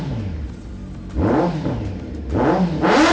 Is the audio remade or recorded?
recorded